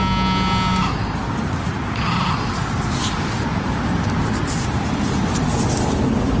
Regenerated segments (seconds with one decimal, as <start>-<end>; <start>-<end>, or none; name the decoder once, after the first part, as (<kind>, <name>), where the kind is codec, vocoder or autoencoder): 0.7-1.9 (vocoder, BigVGAN v2); 3.0-6.0